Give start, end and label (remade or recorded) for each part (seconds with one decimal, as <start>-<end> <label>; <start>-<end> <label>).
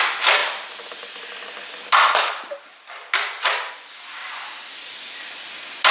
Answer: 0.0-5.9 recorded